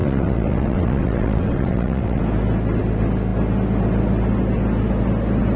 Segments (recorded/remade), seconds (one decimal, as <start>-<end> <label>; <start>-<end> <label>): 0.0-2.2 remade; 2.2-5.6 recorded